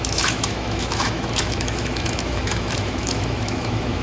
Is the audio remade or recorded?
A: remade